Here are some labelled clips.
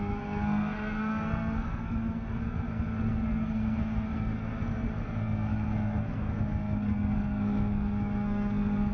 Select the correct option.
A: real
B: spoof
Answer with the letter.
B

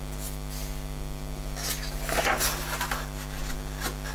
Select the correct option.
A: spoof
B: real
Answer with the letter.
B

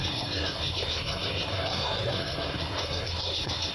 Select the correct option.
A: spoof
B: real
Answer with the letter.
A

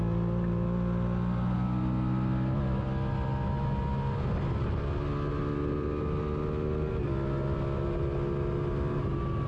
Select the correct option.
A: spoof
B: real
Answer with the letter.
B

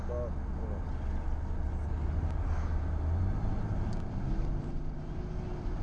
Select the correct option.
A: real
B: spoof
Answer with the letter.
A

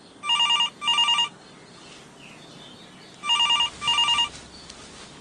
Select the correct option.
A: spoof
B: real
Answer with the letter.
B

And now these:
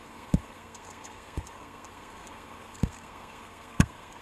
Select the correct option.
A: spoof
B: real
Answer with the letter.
A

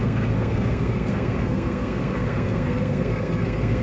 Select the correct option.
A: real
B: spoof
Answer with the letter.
B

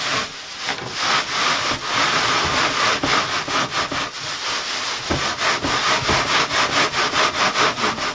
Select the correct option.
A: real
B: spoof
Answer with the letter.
A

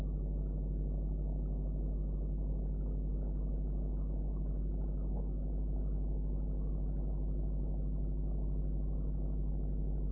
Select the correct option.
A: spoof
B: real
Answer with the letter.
B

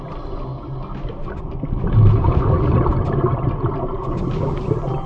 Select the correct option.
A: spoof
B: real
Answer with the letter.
B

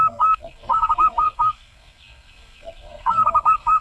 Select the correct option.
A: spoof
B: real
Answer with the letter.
A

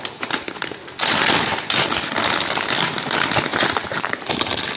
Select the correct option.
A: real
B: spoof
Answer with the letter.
A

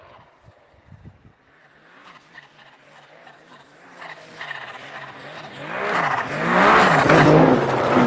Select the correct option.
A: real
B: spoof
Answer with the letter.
A